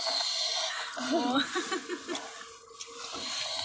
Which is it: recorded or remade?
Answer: recorded